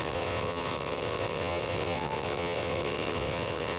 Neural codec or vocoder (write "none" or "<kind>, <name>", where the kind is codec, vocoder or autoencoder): vocoder, WaveNeXt